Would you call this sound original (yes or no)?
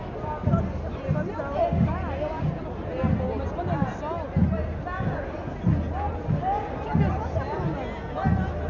yes